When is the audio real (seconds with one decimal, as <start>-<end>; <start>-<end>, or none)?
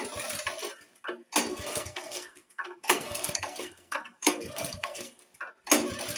0.0-1.5; 5.2-6.2